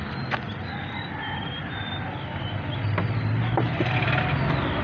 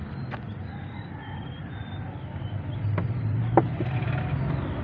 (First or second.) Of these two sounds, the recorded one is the first